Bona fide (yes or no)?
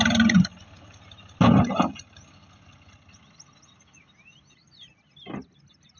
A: no